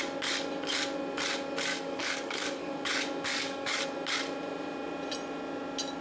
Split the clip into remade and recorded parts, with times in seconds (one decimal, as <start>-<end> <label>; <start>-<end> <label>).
0.0-1.7 recorded; 1.7-2.7 remade; 2.7-3.3 recorded; 3.3-3.8 remade; 3.8-6.0 recorded